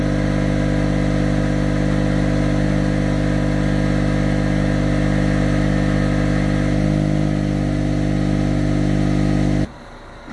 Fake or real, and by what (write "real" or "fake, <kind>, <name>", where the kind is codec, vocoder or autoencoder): real